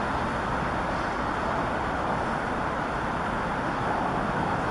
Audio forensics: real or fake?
real